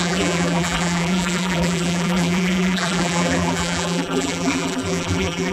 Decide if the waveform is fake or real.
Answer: fake